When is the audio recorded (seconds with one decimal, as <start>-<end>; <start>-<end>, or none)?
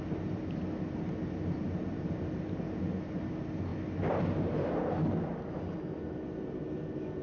0.0-7.2